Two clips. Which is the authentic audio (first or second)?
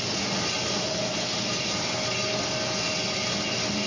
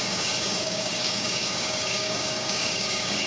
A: first